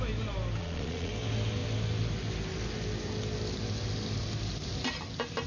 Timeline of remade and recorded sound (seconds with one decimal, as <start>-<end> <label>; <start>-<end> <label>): 0.0-0.6 recorded; 0.6-1.1 remade; 1.1-5.5 recorded